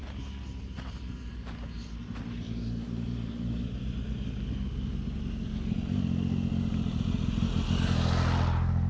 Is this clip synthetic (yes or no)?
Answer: no